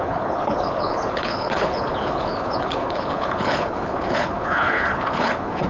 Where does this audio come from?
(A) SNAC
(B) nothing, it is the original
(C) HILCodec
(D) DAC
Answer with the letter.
C